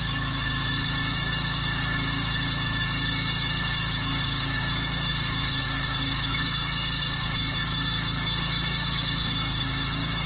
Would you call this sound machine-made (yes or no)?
yes